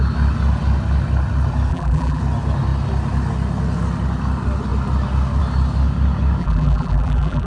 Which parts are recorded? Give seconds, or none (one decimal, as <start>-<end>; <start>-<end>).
0.0-1.7; 2.2-6.4